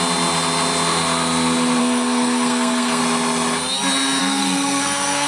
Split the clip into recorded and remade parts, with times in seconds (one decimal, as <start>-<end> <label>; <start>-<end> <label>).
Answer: 0.0-1.8 recorded; 1.8-3.0 remade; 3.0-4.2 recorded; 4.2-5.3 remade

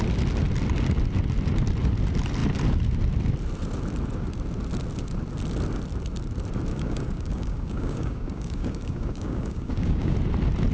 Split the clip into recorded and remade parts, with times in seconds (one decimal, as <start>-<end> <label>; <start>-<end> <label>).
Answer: 0.0-6.7 recorded; 6.7-10.1 remade; 10.1-10.7 recorded

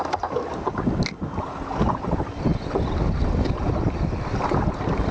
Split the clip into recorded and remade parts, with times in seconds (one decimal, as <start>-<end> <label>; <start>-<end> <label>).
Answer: 0.0-5.1 recorded

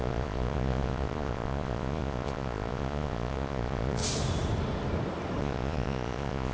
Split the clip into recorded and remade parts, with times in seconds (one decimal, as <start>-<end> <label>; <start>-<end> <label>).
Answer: 0.0-4.0 remade; 4.0-5.4 recorded; 5.4-6.5 remade